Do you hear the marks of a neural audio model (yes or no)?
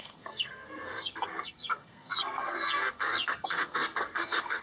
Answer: yes